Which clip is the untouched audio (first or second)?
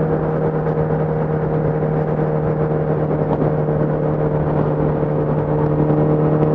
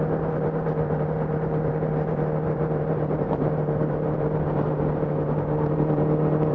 first